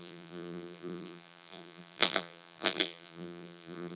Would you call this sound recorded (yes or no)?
no